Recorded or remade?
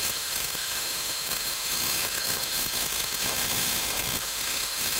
remade